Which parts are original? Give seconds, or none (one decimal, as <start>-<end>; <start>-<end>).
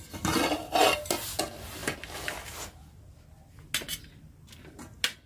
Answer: 0.0-5.3